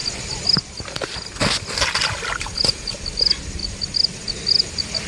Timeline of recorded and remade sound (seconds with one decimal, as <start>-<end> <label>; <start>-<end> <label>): 0.0-5.1 recorded